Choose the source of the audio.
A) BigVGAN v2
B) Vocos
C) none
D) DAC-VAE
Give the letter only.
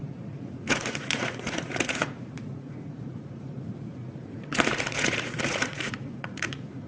B